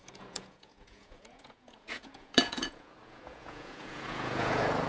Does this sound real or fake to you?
fake